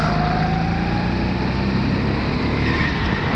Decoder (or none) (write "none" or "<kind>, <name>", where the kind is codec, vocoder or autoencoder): none